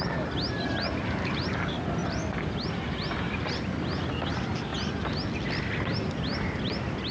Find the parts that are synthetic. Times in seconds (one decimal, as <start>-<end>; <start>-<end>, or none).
2.0-4.0; 6.3-7.1

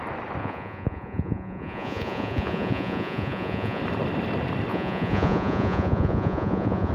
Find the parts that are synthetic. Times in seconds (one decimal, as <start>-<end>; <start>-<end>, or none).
0.4-3.8; 4.7-6.9

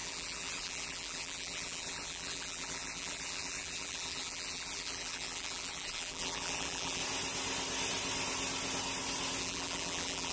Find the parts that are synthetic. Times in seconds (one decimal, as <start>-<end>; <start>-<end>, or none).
0.0-7.0; 9.4-10.3